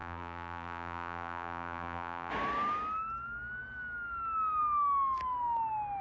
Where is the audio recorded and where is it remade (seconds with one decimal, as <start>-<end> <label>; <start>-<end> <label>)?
0.0-2.3 remade; 2.3-6.0 recorded